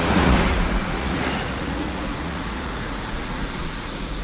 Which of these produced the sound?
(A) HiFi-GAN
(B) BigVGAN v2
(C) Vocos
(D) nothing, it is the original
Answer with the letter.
C